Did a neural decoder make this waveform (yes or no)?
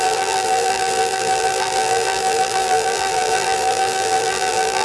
yes